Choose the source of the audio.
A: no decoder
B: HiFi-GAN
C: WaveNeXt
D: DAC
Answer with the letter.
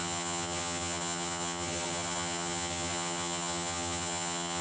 B